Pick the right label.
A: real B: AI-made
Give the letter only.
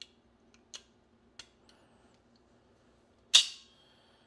A